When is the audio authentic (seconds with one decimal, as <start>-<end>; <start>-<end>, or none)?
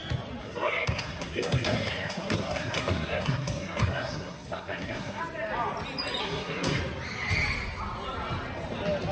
0.0-0.4; 5.2-6.2; 6.8-9.1